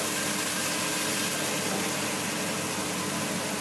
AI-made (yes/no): no